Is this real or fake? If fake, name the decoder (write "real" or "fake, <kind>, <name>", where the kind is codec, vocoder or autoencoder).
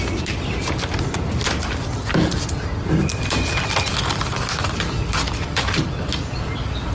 real